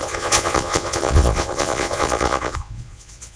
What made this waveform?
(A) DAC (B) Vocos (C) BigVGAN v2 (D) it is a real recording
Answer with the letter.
B